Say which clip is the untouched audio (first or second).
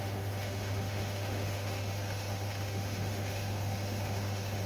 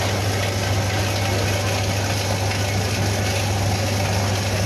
second